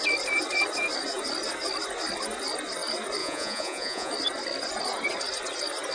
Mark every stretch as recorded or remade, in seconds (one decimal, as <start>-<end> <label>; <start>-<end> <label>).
0.0-3.2 recorded; 3.2-4.1 remade; 4.1-5.9 recorded